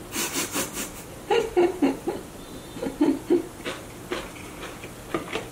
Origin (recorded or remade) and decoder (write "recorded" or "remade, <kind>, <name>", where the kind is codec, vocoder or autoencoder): remade, vocoder, BigVGAN v2